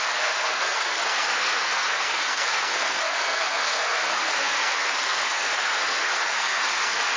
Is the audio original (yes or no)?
no